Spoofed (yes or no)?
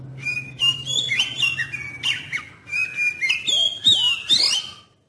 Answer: no